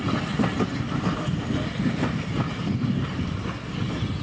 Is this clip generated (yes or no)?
no